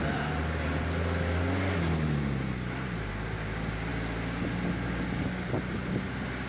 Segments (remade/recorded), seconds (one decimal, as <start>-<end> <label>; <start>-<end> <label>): 0.0-6.5 recorded